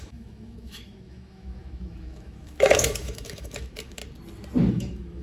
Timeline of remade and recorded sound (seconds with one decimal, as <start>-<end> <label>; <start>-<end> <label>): 0.0-4.0 remade; 4.0-4.7 recorded; 4.7-5.2 remade